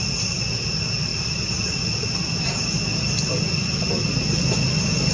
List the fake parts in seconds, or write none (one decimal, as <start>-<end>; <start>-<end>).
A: none